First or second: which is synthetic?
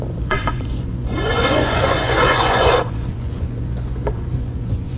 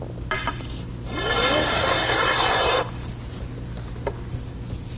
first